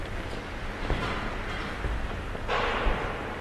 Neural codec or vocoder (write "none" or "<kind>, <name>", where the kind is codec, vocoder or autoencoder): none